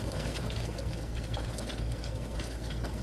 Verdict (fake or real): fake